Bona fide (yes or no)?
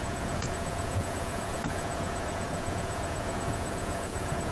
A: no